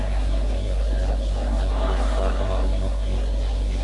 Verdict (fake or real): fake